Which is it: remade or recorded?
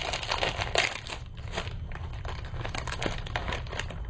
recorded